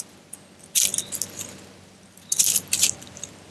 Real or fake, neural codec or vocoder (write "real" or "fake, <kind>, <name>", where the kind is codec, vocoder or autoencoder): real